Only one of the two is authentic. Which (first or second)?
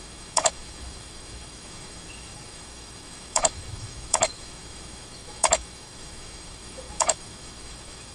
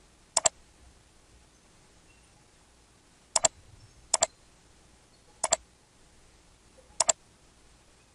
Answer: second